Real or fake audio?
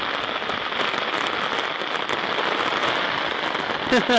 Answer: real